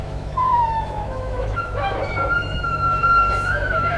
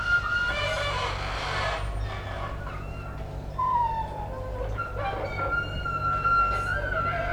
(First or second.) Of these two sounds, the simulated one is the first